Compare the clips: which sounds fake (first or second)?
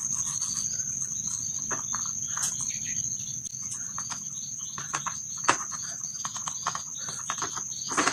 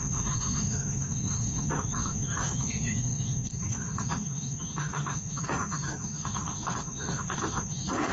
second